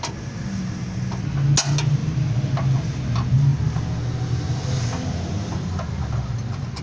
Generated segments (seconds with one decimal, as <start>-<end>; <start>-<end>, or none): 2.0-2.5